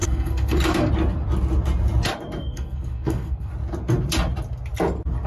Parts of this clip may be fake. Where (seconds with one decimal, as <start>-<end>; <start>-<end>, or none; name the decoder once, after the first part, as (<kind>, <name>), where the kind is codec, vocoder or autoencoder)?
0.0-0.9 (codec, SNAC); 2.4-3.5